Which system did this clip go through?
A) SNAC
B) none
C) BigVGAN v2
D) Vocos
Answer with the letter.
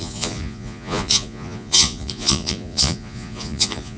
D